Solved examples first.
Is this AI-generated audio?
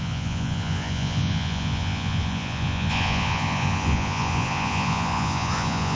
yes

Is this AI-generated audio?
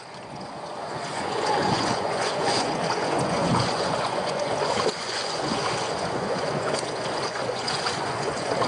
yes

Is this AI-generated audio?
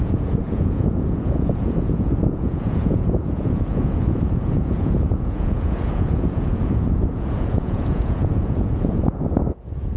yes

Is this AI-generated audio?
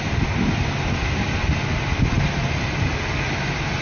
no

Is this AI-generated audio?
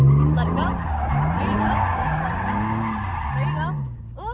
no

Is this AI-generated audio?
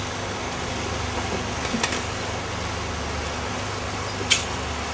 no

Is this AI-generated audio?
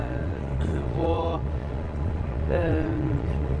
yes